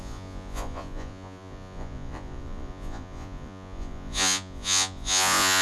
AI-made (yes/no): yes